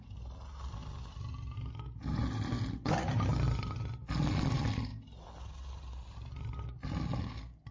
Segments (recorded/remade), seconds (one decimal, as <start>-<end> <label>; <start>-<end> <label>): 0.0-7.7 recorded